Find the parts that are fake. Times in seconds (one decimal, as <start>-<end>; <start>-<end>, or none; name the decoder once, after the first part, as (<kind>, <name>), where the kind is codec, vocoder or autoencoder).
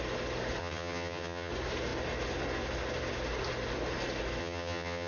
0.6-1.5 (vocoder, HiFi-GAN); 4.4-5.1